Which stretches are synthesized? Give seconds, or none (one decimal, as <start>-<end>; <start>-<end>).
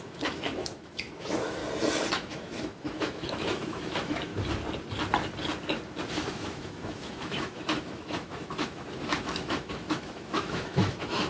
0.0-1.6; 2.1-4.3; 6.3-11.3